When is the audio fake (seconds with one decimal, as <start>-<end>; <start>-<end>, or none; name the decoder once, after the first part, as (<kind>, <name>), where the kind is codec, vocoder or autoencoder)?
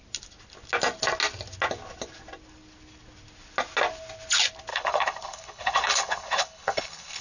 4.7-7.2 (codec, HILCodec)